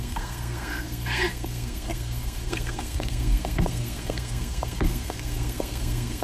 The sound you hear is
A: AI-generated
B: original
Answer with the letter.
A